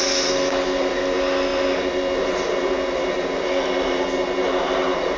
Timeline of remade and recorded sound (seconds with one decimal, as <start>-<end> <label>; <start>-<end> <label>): 0.0-5.2 recorded